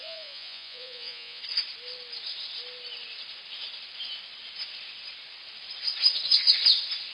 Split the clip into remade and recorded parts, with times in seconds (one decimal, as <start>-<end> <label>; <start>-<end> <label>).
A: 0.0-1.4 remade; 1.4-7.1 recorded